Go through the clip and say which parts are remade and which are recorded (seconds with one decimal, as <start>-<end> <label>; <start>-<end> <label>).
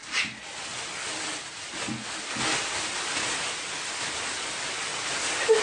0.0-2.2 remade; 2.2-4.9 recorded; 4.9-5.6 remade